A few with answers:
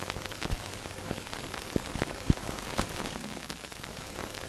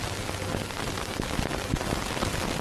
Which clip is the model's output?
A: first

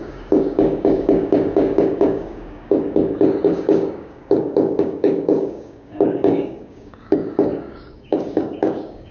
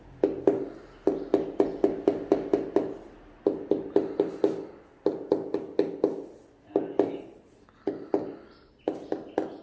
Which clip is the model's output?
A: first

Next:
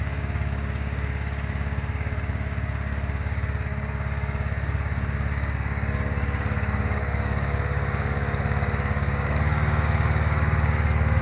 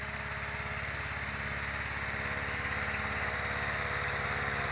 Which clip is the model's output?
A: first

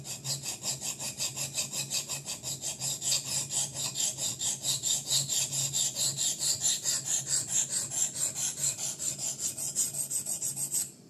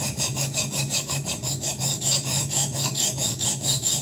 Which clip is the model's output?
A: second